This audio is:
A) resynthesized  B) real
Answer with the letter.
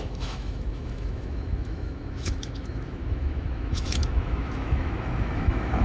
A